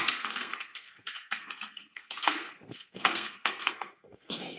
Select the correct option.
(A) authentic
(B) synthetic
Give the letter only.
B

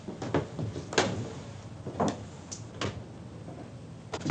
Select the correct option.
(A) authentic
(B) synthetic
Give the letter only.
A